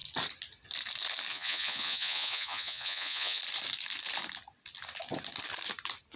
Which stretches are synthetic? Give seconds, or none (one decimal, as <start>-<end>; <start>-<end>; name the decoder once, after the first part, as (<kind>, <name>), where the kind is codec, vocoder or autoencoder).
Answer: 1.3-3.4 (vocoder, Vocos)